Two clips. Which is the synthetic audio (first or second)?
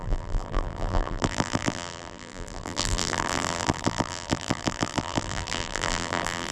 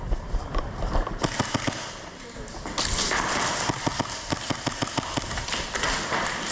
first